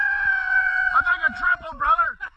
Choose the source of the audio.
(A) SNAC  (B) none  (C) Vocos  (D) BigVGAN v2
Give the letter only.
C